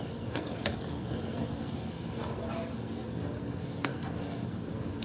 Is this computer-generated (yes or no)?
yes